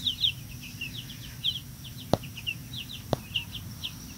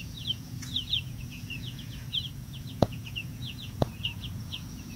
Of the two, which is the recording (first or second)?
first